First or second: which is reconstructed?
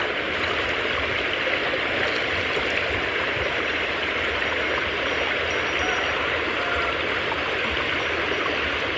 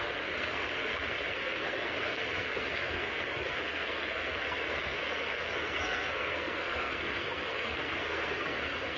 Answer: second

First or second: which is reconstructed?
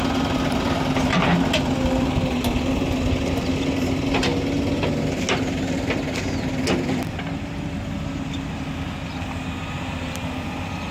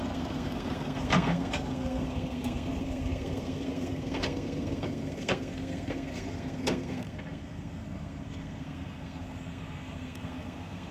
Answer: second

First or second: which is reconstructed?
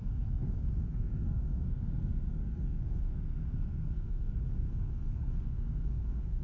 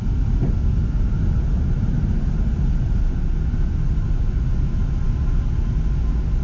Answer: first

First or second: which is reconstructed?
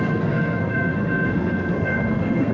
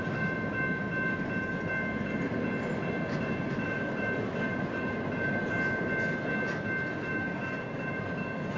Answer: first